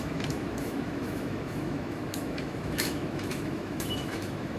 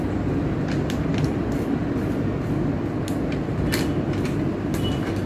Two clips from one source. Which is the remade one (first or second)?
first